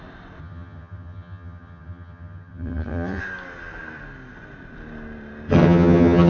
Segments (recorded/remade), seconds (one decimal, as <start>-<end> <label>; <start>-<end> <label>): 0.0-0.4 recorded; 0.4-3.2 remade; 3.2-5.5 recorded; 5.5-6.3 remade